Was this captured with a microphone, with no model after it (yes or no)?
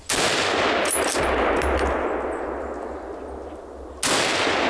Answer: yes